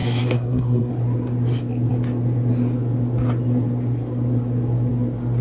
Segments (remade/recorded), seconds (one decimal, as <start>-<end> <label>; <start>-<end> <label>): 0.0-0.9 remade; 0.9-5.4 recorded